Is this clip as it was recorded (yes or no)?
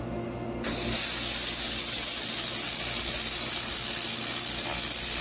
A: yes